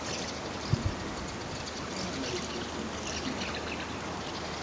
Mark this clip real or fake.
real